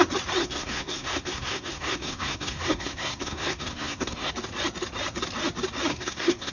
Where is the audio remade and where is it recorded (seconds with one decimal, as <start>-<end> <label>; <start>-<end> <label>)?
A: 0.0-0.4 recorded; 0.4-4.3 remade; 4.3-5.9 recorded; 5.9-6.5 remade